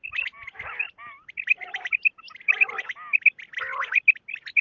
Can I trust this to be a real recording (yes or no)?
yes